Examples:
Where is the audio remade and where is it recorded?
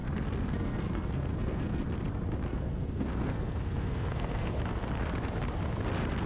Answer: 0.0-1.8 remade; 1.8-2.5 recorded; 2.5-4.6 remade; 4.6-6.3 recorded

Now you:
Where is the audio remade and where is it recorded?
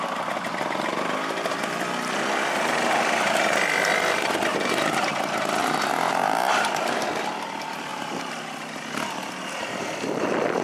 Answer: 0.0-10.6 recorded